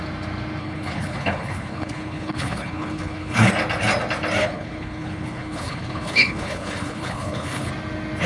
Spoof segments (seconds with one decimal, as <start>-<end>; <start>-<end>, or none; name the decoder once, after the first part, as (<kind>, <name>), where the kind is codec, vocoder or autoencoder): 0.6-3.5 (codec, HILCodec); 4.4-7.7